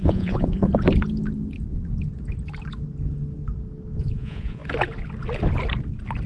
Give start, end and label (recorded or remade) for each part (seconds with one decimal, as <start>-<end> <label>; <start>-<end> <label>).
0.0-0.6 remade; 0.6-4.0 recorded; 4.0-4.6 remade; 4.6-6.3 recorded